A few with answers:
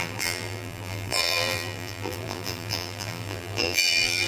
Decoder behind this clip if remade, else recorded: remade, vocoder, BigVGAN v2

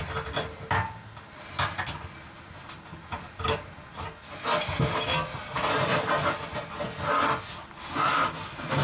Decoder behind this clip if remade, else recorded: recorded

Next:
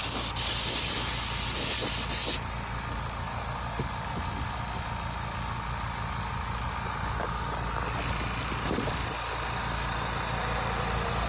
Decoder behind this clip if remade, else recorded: recorded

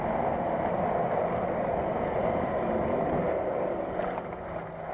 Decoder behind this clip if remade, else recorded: recorded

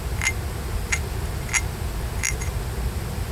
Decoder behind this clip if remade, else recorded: recorded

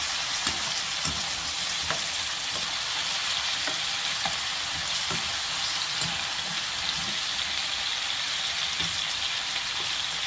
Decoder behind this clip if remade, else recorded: recorded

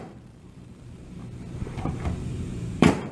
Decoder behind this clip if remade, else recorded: remade, vocoder, BigVGAN v2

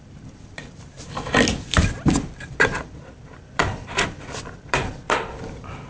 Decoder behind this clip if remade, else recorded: remade, vocoder, BigVGAN v2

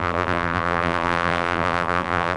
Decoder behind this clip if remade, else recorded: remade, vocoder, BigVGAN v2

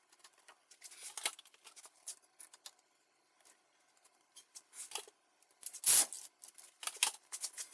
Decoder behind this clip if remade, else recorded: recorded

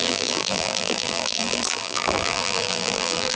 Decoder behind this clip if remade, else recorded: remade, vocoder, BigVGAN v2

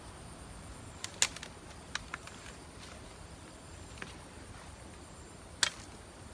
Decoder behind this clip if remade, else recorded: recorded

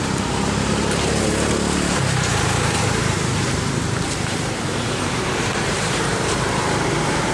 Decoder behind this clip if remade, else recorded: remade, vocoder, BigVGAN v2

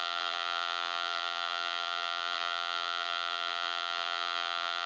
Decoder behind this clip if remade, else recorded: remade, vocoder, BigVGAN v2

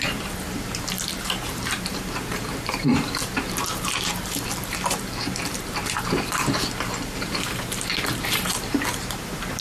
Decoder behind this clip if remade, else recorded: remade, vocoder, BigVGAN v2